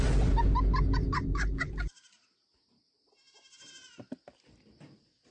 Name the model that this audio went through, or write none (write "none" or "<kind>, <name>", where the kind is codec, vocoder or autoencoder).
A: none